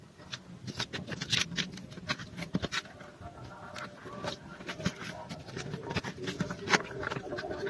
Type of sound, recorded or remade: recorded